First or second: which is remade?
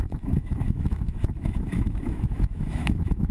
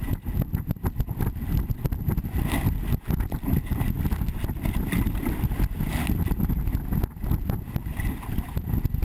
first